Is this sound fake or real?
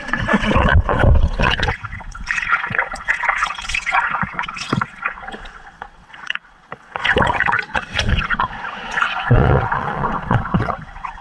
fake